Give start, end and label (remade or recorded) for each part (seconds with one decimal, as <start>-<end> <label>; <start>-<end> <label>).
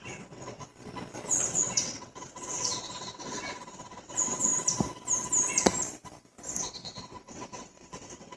0.0-0.7 remade; 0.7-1.3 recorded; 1.3-4.5 remade; 4.5-6.6 recorded; 6.6-8.4 remade